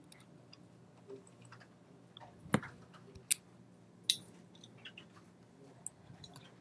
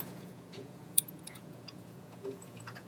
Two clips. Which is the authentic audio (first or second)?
first